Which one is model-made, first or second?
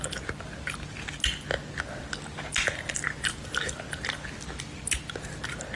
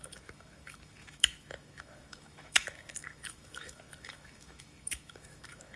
second